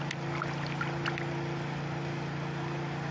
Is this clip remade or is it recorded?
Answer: recorded